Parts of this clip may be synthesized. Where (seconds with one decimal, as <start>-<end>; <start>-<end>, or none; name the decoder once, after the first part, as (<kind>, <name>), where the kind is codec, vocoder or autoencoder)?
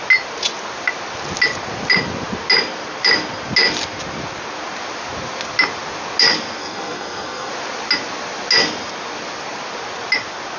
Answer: 6.6-7.5 (codec, SNAC)